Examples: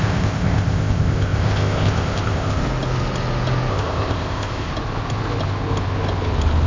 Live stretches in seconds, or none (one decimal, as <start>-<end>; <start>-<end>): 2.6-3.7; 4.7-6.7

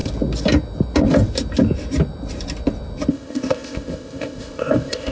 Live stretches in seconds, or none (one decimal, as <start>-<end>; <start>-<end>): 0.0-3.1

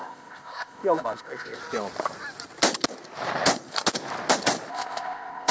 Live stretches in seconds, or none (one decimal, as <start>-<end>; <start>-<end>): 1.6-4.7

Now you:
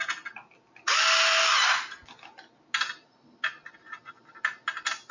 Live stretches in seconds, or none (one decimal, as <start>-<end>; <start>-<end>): 0.0-5.1

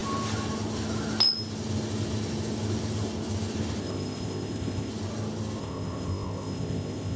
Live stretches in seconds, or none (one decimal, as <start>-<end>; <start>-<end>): 0.0-3.8; 4.9-5.6

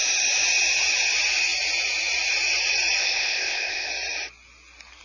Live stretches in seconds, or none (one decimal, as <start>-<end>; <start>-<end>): 0.0-3.0; 3.9-5.0

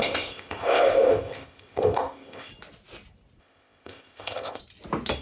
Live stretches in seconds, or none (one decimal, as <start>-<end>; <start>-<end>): 2.5-3.4; 4.6-5.2